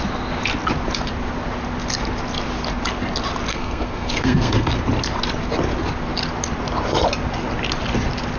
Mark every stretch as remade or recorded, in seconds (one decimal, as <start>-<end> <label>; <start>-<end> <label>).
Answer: 0.0-3.5 recorded; 3.5-4.7 remade; 4.7-8.4 recorded